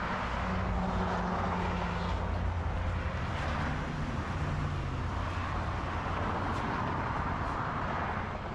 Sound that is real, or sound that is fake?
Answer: real